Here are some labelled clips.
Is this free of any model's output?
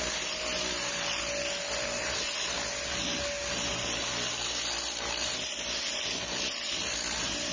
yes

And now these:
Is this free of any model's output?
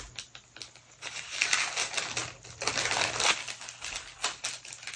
yes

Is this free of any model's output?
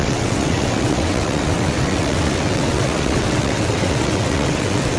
no